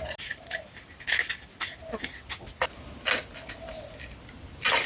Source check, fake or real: real